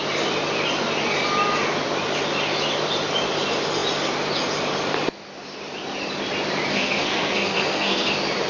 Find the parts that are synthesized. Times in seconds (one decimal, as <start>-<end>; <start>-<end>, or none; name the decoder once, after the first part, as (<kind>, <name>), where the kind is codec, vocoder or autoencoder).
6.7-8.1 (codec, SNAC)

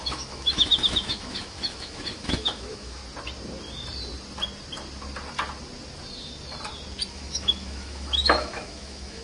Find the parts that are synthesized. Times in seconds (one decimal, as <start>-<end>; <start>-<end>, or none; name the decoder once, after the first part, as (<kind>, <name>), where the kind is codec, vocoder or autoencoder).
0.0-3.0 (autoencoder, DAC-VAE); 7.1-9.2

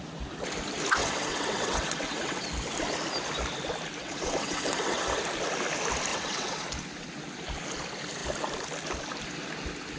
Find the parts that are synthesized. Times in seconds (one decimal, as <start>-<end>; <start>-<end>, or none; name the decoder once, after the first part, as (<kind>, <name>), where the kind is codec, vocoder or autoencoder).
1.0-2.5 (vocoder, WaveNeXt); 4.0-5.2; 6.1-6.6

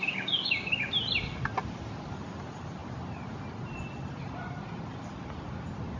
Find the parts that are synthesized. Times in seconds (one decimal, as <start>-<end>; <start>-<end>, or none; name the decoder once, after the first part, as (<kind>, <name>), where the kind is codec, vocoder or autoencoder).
0.0-0.9 (codec, DAC)

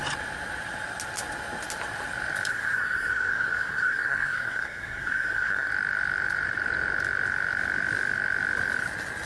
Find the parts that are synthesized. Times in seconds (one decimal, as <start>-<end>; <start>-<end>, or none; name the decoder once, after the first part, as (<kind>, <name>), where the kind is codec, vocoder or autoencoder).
2.5-5.7 (codec, SNAC)

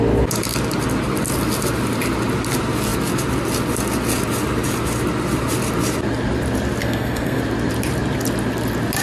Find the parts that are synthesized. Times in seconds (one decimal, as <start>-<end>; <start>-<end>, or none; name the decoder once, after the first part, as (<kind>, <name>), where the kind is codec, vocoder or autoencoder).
6.8-7.4 (codec, SNAC)

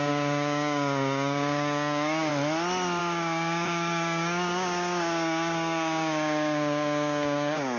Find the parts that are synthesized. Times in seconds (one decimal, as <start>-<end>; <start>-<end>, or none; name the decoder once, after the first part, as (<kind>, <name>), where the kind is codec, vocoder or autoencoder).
0.0-2.3 (codec, DAC); 3.0-7.8

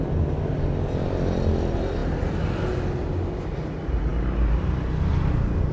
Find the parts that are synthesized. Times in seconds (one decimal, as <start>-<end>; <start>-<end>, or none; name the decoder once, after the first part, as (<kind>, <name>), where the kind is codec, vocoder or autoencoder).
none